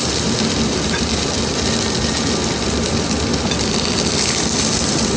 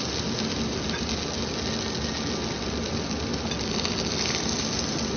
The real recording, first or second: second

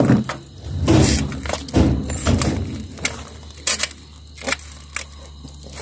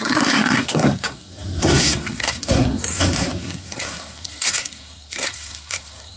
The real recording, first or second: first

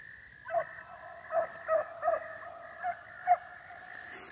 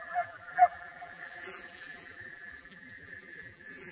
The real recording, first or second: first